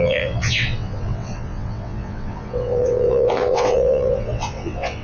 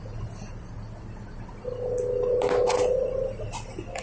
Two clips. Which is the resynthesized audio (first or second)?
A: first